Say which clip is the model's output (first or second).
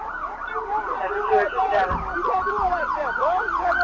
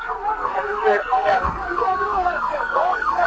second